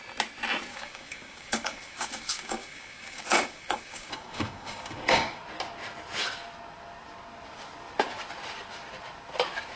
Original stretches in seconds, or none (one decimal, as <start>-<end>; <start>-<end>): 0.0-0.7; 5.4-9.8